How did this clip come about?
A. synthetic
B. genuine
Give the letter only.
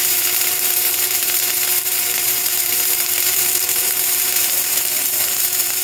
A